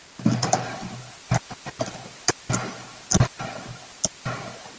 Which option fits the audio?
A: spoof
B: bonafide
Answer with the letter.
B